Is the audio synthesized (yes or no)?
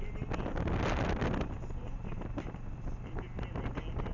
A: no